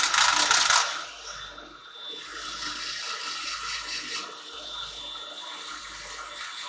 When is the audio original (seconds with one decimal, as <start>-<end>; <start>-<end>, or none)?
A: 0.0-6.7